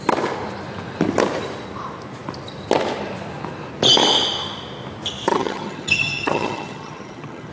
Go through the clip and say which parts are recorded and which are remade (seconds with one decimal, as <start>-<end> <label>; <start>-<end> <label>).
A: 0.0-5.3 recorded; 5.3-7.5 remade